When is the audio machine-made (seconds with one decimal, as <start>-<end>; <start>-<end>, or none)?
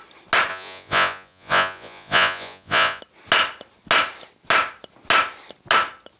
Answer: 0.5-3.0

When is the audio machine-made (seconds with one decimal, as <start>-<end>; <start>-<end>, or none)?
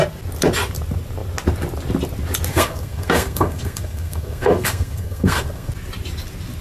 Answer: 2.5-5.7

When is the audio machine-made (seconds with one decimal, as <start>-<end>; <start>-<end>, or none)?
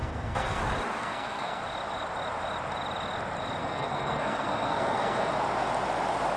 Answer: 0.0-0.6; 1.0-1.6; 3.6-5.3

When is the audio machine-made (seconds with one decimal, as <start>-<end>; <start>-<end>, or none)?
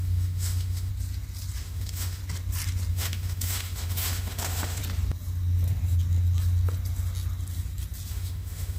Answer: 0.0-0.9; 1.6-2.2; 2.9-4.8; 8.1-8.8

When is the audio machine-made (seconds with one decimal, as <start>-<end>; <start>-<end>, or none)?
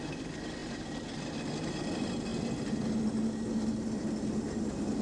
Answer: none